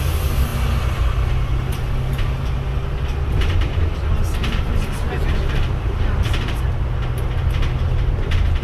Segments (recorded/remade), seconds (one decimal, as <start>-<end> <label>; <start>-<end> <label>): 0.0-3.1 recorded; 3.1-3.9 remade; 3.9-4.4 recorded; 4.4-6.6 remade; 6.6-8.6 recorded